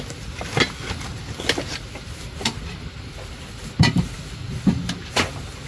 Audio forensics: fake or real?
real